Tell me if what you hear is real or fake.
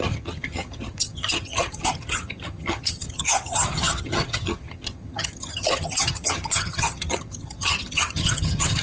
fake